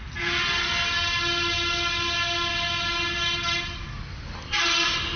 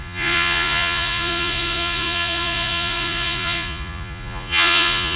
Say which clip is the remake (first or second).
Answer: second